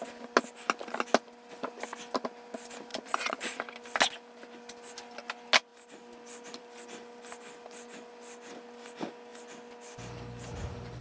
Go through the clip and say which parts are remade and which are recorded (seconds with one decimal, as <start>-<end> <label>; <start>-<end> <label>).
0.0-2.9 recorded; 2.9-3.6 remade; 3.6-11.0 recorded